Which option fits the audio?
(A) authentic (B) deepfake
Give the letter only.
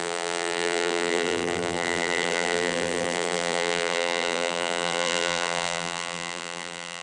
B